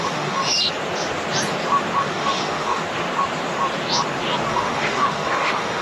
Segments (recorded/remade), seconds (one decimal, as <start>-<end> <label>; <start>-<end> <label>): 0.0-0.5 remade; 0.5-2.0 recorded; 2.0-2.8 remade; 2.8-4.5 recorded; 4.5-5.8 remade